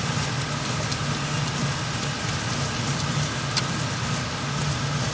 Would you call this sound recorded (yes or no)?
yes